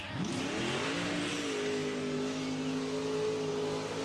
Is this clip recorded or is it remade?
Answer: recorded